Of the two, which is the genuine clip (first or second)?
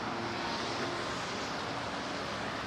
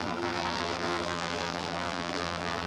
first